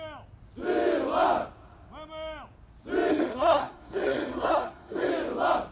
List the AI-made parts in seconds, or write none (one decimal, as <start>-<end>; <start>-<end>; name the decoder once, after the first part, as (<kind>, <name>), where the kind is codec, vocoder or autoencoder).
3.1-5.1 (codec, SNAC)